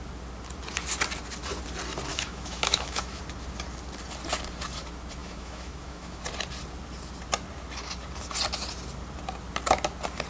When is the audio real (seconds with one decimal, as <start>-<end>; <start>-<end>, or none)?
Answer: 0.0-2.1; 3.2-5.2; 6.2-10.3